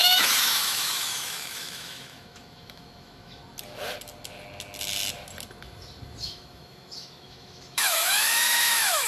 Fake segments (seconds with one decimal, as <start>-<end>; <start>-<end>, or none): 0.0-3.4; 6.2-9.1